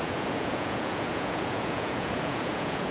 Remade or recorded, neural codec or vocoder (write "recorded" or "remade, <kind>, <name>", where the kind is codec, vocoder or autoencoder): remade, vocoder, Vocos